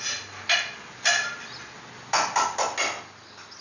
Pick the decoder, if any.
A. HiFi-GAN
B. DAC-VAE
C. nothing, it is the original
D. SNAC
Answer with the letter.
C